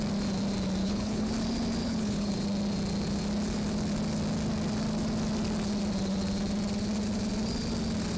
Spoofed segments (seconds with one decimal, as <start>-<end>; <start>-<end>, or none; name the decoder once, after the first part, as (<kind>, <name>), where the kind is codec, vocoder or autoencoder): 0.8-1.3 (codec, HILCodec); 1.8-2.3